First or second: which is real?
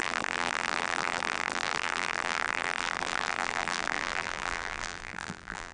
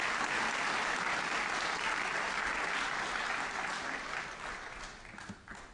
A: second